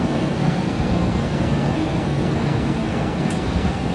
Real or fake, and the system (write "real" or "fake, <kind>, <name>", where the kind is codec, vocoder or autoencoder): fake, codec, SNAC